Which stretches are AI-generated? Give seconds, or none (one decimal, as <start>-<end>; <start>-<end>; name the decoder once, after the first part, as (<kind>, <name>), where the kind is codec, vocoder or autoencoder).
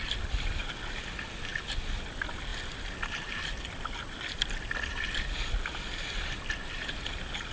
none